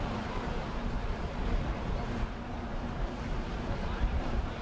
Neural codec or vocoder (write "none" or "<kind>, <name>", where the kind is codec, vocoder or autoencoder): vocoder, BigVGAN v2